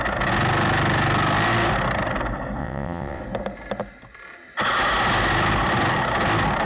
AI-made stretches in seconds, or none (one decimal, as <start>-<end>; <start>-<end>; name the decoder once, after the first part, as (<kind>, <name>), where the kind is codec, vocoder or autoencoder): 2.6-3.2 (vocoder, WaveNeXt)